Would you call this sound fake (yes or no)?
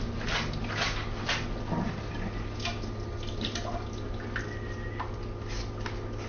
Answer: no